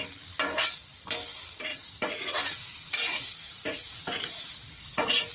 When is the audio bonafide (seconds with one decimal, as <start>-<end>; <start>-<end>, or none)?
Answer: 0.0-1.7